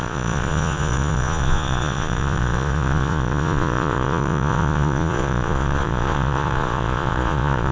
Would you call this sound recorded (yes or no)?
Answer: no